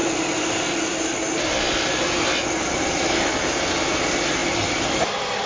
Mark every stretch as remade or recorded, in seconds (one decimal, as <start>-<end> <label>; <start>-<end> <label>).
0.0-3.3 remade; 3.3-4.4 recorded; 4.4-5.1 remade; 5.1-5.5 recorded